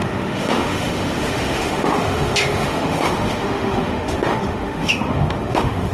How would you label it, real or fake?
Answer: fake